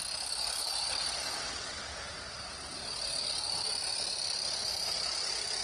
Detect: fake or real real